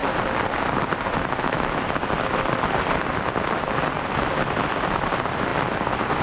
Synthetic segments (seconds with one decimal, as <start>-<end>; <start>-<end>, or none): none